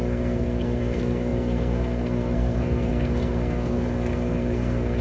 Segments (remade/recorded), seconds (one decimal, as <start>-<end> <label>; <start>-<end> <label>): 0.0-5.0 remade